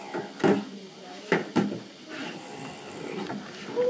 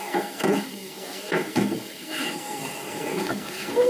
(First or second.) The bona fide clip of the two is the first